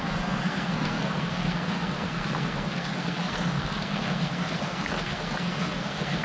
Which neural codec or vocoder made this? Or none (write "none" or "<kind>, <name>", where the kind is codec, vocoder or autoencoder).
codec, SNAC